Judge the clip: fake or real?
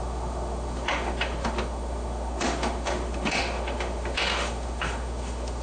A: fake